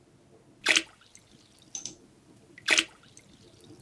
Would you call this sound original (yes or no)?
yes